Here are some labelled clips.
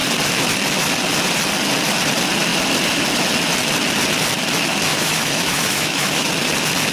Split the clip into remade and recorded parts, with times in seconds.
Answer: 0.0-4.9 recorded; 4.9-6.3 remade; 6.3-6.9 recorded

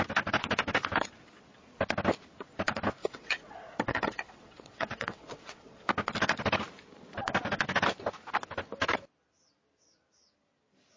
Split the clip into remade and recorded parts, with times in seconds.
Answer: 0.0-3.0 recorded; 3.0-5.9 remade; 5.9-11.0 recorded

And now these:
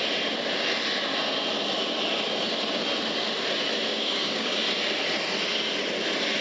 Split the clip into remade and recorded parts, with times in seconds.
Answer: 0.0-3.9 recorded; 3.9-4.6 remade; 4.6-6.4 recorded

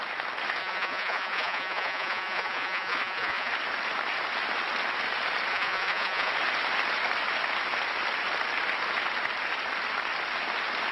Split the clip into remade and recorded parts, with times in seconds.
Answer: 0.0-0.6 recorded; 0.6-3.5 remade; 3.5-5.5 recorded; 5.5-6.3 remade; 6.3-10.9 recorded

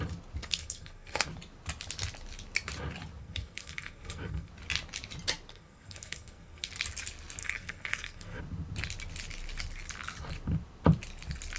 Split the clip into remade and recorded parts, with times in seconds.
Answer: 0.0-0.4 recorded; 0.4-1.3 remade; 1.3-3.2 recorded; 3.2-4.5 remade; 4.5-5.5 recorded; 5.5-6.7 remade; 6.7-7.4 recorded; 7.4-8.4 remade; 8.4-11.6 recorded

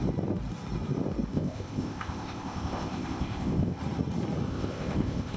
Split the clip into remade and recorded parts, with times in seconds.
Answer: 0.0-1.3 recorded; 1.3-3.8 remade; 3.8-4.5 recorded; 4.5-5.4 remade

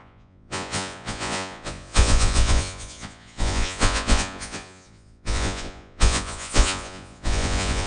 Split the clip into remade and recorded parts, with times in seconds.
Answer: 0.0-7.9 remade

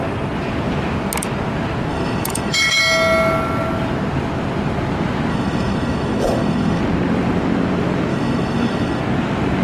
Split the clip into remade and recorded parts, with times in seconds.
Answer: 0.0-1.9 recorded; 1.9-2.8 remade; 2.8-5.3 recorded; 5.3-6.8 remade; 6.8-8.1 recorded; 8.1-9.0 remade; 9.0-9.6 recorded